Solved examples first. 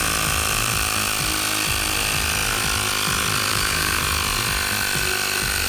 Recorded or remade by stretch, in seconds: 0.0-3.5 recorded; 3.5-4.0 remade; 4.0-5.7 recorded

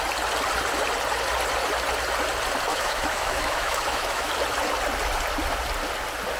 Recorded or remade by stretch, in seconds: 0.0-2.7 recorded; 2.7-4.3 remade; 4.3-6.4 recorded

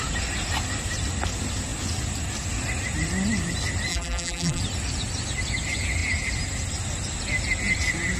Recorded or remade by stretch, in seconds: 0.0-3.9 recorded; 3.9-4.6 remade; 4.6-8.2 recorded

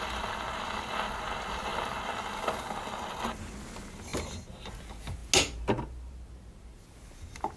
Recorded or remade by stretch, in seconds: 0.0-7.6 recorded

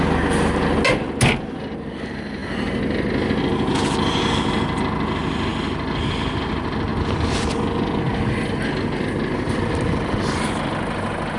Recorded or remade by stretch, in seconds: 0.0-11.4 recorded

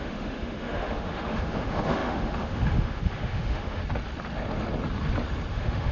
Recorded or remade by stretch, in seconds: 0.0-3.8 remade; 3.8-5.5 recorded; 5.5-5.9 remade